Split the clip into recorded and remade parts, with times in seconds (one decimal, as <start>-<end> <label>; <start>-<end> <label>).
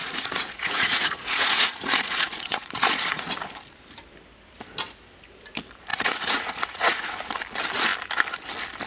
0.0-3.3 remade; 3.3-5.9 recorded; 5.9-7.3 remade; 7.3-8.9 recorded